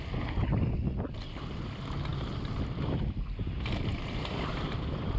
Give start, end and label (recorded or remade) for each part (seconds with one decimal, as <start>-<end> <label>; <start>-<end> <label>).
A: 0.0-2.1 recorded; 2.1-5.2 remade